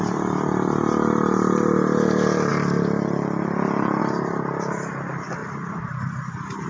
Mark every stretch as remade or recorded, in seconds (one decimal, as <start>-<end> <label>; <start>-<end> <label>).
0.0-2.5 recorded; 2.5-4.0 remade; 4.0-5.4 recorded; 5.4-6.1 remade; 6.1-6.7 recorded